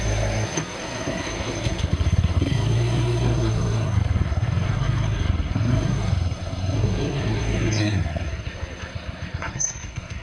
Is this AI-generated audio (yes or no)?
yes